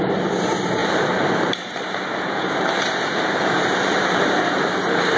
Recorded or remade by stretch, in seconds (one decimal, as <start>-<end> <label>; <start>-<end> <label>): 0.0-5.2 remade